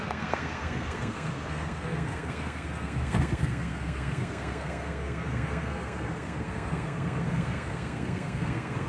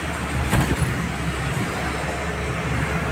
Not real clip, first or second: first